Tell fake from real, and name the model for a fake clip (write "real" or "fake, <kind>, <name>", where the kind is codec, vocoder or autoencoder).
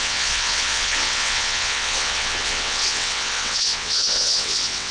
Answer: fake, vocoder, WaveNeXt